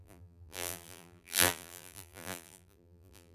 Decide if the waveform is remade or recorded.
remade